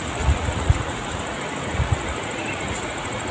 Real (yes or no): no